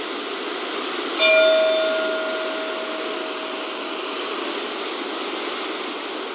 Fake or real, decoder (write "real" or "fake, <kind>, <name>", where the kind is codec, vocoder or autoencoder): real